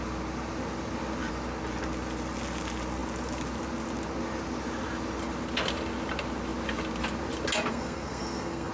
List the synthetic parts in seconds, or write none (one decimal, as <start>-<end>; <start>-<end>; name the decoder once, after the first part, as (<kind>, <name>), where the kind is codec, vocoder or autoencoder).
7.7-8.7 (codec, SNAC)